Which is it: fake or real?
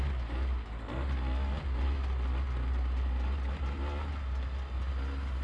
real